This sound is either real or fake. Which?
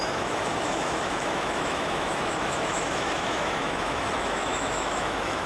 fake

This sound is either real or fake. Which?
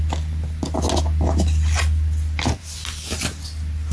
real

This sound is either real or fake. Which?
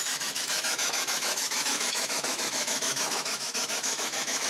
fake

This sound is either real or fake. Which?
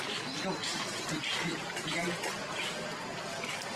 real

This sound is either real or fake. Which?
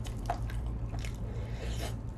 real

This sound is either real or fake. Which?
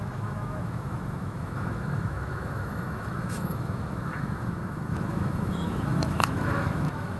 fake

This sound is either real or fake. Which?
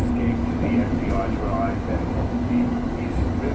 real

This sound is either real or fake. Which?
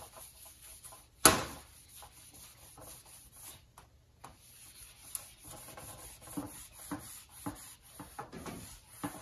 real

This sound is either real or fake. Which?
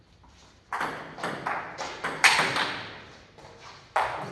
real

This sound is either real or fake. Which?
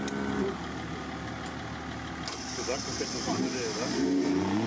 real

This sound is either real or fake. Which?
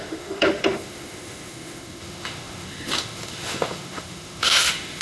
fake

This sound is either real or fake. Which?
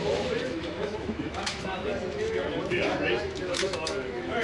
fake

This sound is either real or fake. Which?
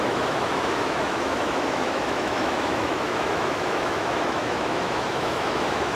fake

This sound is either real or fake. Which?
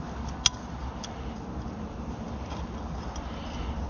real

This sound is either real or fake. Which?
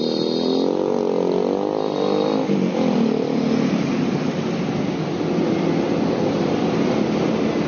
real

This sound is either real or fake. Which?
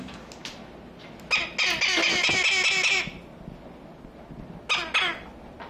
real